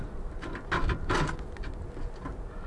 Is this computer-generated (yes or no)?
no